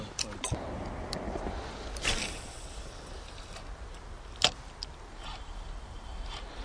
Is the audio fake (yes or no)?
no